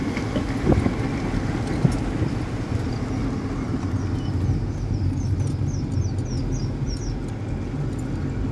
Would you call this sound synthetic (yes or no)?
no